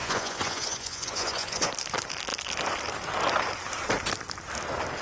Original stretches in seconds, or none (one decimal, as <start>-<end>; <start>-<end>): 1.7-5.0